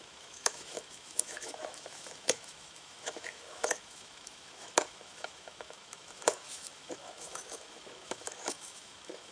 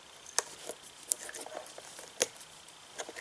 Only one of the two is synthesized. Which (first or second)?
first